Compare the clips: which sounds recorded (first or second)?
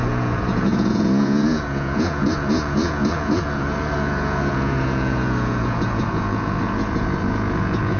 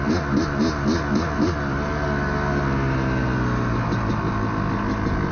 second